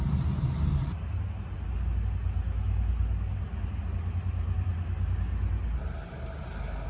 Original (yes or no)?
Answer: yes